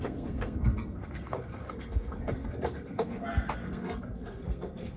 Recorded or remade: remade